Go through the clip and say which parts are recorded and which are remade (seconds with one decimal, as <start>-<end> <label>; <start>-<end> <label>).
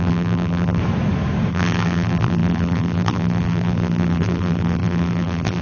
0.0-0.8 remade; 0.8-1.5 recorded; 1.5-5.6 remade